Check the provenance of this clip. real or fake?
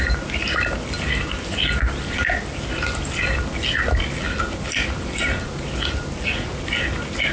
real